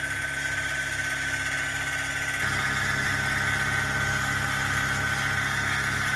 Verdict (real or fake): real